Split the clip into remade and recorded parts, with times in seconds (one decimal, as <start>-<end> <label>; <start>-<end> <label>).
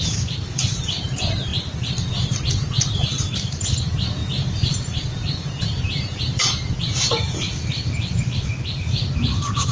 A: 0.0-1.5 remade; 1.5-2.5 recorded; 2.5-9.7 remade